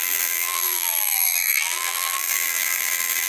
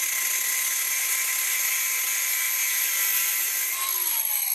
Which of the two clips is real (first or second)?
second